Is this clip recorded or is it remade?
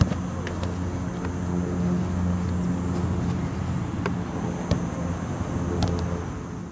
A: recorded